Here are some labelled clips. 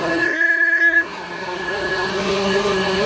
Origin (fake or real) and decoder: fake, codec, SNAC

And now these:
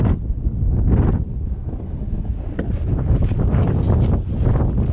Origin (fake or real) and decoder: real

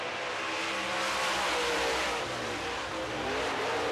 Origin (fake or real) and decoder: real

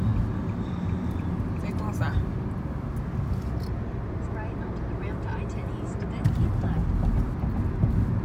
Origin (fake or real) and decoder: real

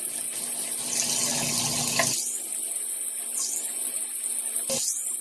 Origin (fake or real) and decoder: real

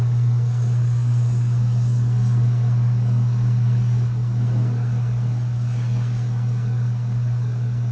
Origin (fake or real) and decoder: fake, codec, SNAC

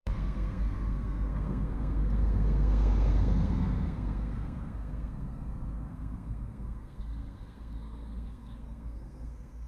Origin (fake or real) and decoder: fake, codec, SNAC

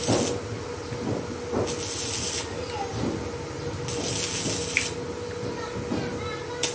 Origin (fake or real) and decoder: real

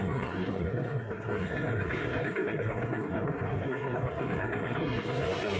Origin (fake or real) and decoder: fake, codec, SNAC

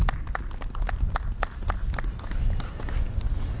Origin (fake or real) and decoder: real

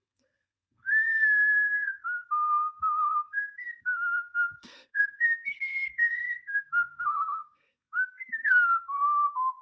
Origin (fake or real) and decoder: fake, codec, SNAC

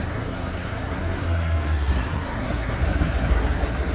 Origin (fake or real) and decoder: fake, codec, SNAC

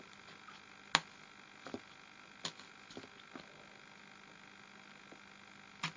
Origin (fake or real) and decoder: real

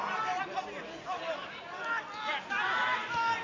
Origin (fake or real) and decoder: real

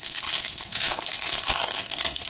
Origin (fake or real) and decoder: fake, codec, SNAC